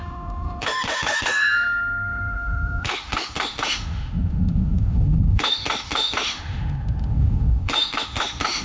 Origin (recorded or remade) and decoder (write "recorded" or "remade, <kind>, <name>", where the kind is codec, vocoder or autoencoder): remade, autoencoder, DAC-VAE